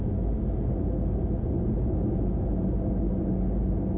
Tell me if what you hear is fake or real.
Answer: real